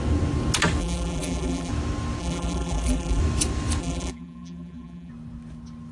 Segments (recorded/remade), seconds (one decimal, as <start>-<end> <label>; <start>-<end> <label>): 0.0-0.8 recorded; 0.8-1.7 remade; 1.7-2.2 recorded; 2.2-3.2 remade; 3.2-3.8 recorded; 3.8-5.1 remade; 5.1-5.9 recorded